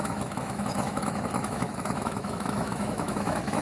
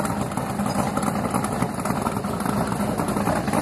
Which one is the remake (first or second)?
first